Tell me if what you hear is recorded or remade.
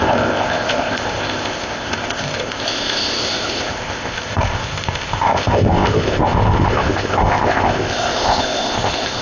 remade